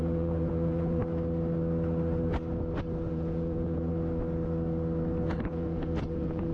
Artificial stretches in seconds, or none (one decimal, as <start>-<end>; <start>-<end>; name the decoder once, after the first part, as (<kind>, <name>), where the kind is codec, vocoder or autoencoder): 0.0-1.0 (vocoder, Vocos); 3.1-3.9; 5.3-6.5